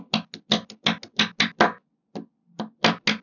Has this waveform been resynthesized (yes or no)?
no